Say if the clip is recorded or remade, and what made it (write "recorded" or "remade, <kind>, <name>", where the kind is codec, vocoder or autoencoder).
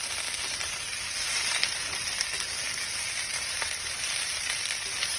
recorded